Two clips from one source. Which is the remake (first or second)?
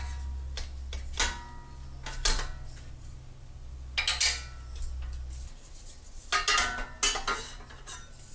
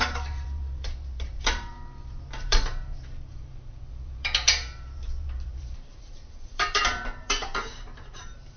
second